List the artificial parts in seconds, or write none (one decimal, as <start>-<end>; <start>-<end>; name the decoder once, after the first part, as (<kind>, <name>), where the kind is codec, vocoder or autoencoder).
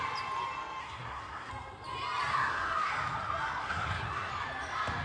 0.8-1.5 (codec, SNAC); 2.3-2.9; 3.6-4.3